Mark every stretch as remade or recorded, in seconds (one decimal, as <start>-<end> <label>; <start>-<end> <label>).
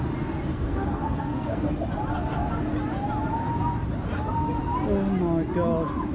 0.0-0.5 recorded; 0.5-1.7 remade; 1.7-6.1 recorded